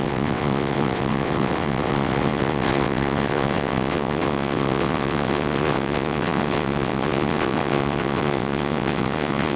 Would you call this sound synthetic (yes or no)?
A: yes